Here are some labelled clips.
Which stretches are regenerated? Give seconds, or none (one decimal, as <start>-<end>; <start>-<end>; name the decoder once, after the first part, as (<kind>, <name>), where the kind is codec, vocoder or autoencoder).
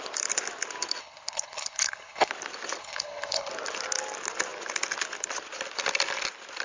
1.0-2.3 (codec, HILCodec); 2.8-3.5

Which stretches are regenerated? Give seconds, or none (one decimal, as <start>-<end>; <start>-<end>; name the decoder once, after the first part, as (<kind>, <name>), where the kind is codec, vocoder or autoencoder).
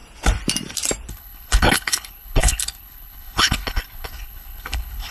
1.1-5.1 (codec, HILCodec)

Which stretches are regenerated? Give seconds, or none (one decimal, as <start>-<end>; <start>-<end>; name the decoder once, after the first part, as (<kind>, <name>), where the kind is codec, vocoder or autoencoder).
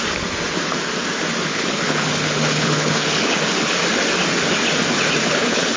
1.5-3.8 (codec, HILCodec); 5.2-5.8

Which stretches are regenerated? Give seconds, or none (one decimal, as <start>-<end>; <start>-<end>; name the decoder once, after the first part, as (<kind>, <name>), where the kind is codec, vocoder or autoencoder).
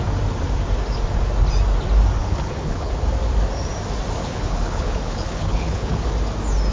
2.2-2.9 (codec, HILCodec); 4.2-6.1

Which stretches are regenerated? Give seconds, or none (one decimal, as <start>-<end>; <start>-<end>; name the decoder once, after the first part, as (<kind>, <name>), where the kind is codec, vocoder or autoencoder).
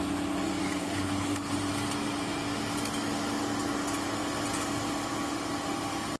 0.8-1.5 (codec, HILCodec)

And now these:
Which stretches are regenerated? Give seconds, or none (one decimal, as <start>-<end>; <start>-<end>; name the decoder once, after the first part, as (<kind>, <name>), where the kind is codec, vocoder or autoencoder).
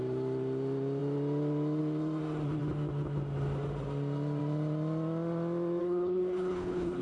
5.8-7.0 (codec, HILCodec)